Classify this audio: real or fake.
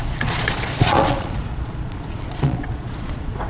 fake